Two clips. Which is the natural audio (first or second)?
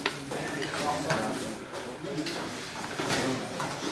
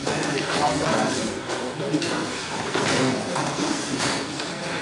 first